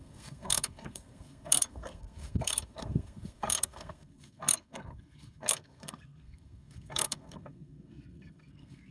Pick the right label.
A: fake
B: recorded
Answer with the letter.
A